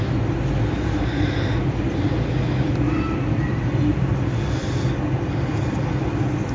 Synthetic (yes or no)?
no